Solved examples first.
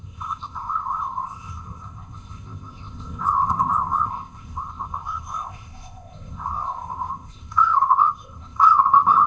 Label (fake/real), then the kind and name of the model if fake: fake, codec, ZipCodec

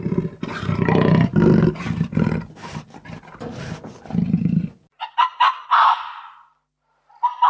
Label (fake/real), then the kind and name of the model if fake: real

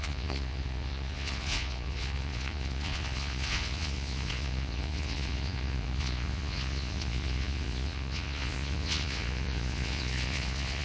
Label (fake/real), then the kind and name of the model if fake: fake, vocoder, Vocos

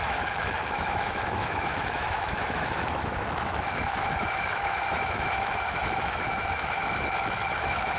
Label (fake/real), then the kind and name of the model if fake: fake, autoencoder, DAC-VAE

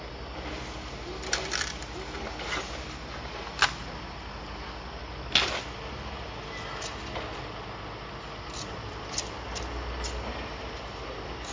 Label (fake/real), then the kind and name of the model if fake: real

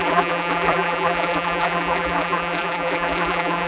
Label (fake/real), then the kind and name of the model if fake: fake, vocoder, BigVGAN v2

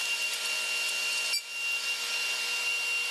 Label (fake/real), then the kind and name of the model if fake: real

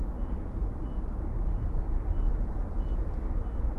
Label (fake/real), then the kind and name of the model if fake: real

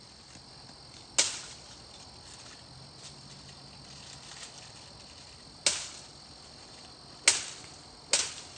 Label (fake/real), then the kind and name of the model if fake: real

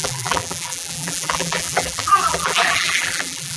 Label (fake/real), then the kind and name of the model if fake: fake, vocoder, BigVGAN v2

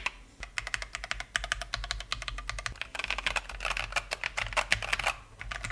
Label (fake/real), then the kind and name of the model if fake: real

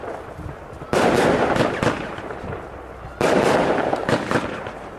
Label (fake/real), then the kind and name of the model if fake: real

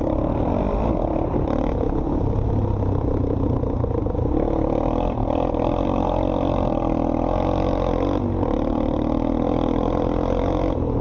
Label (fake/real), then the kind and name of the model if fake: real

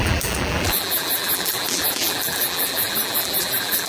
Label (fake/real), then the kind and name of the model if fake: fake, vocoder, BigVGAN v2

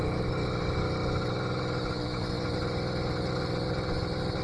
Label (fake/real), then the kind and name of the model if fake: real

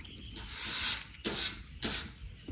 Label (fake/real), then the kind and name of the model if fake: real